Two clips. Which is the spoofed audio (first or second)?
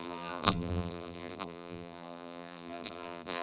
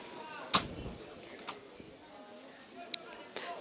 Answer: first